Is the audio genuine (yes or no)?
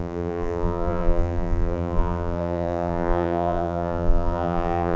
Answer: no